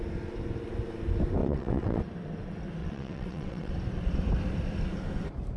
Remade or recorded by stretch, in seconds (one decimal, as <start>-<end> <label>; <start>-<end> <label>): 0.0-1.4 recorded; 1.4-2.0 remade; 2.0-2.8 recorded; 2.8-3.7 remade; 3.7-5.6 recorded